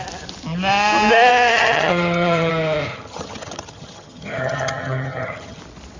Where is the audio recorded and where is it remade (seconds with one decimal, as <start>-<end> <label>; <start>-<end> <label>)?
0.0-1.3 recorded; 1.3-2.5 remade; 2.5-2.9 recorded; 2.9-5.6 remade; 5.6-6.0 recorded